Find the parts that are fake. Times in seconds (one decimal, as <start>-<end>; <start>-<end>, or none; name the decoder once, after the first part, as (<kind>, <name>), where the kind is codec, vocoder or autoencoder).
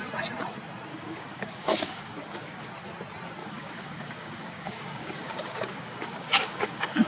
0.9-2.7 (codec, DAC); 3.4-7.1